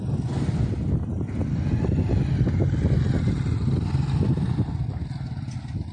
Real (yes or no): yes